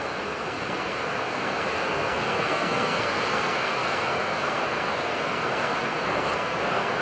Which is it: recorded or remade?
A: remade